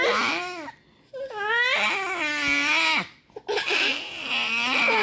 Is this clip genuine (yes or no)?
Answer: yes